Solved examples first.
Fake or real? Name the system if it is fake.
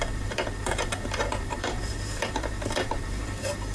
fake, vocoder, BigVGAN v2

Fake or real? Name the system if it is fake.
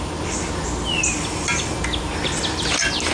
real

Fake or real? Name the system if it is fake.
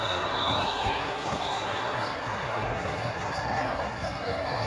fake, codec, SNAC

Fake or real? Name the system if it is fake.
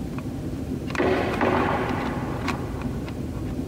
fake, vocoder, BigVGAN v2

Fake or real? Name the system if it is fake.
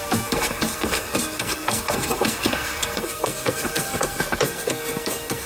fake, codec, SNAC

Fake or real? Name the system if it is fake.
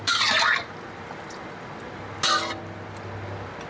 real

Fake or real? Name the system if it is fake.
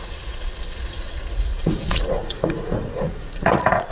fake, vocoder, Vocos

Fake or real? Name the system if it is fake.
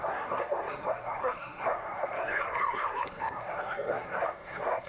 fake, codec, SNAC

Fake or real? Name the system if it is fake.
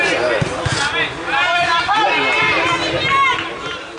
real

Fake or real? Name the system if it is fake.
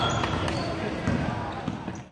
real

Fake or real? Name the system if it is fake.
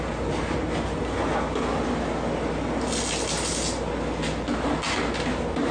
real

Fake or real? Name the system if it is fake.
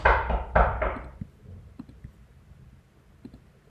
real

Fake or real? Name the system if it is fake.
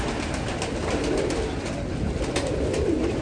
real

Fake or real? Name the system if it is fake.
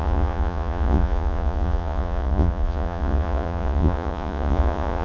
fake, vocoder, Vocos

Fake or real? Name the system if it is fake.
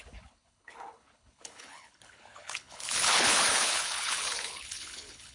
fake, codec, HILCodec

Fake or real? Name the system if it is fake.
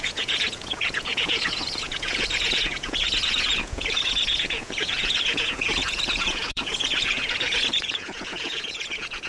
fake, vocoder, Vocos